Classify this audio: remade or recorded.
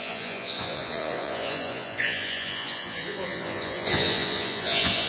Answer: remade